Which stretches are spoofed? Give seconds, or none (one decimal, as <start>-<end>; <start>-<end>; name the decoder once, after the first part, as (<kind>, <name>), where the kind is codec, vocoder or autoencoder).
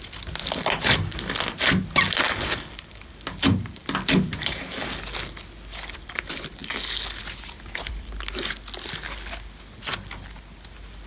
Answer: none